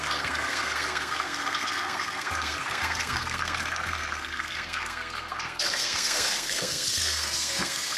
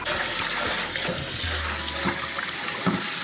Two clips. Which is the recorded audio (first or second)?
second